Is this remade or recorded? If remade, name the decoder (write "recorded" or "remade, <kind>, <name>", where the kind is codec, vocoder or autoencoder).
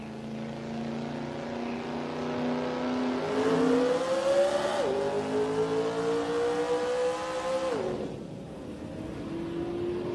recorded